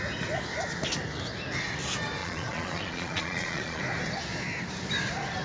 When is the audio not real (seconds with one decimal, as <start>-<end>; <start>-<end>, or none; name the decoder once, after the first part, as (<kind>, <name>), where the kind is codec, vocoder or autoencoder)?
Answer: 2.2-3.8 (vocoder, Vocos)